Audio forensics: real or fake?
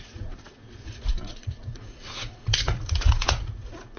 fake